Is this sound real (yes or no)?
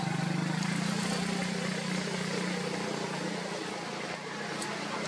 yes